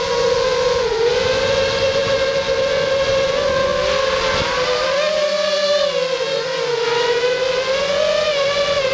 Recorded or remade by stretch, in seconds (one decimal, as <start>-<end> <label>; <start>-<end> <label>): 0.0-3.7 remade; 3.7-6.2 recorded; 6.2-8.9 remade